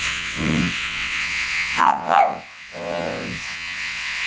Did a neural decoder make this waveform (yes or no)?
yes